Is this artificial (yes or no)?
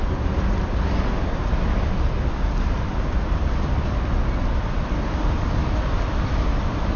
no